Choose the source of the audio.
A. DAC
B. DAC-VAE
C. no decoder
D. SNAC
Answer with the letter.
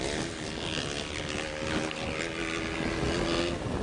C